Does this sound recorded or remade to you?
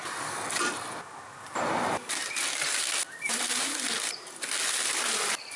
recorded